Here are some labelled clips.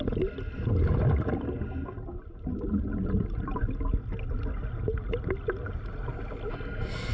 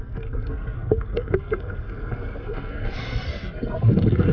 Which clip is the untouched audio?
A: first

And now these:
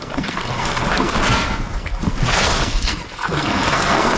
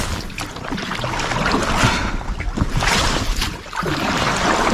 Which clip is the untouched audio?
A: second